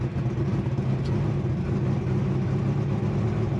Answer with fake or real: real